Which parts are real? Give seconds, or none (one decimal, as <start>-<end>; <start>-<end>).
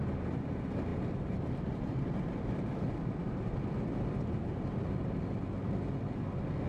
0.0-0.9; 4.1-6.7